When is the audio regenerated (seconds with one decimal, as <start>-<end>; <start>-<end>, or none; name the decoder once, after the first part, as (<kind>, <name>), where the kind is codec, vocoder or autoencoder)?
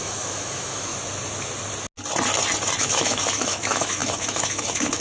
0.0-0.9 (autoencoder, DAC-VAE); 2.8-5.0